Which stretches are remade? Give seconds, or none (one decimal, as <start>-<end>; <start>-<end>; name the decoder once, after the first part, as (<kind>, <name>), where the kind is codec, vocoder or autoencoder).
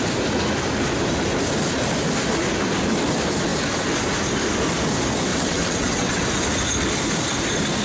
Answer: 5.3-6.2 (vocoder, WaveNeXt)